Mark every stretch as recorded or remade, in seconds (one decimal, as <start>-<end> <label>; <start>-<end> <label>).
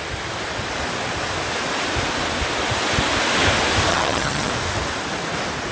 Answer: 0.0-3.9 recorded; 3.9-4.5 remade; 4.5-5.7 recorded